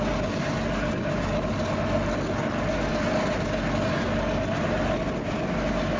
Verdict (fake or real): real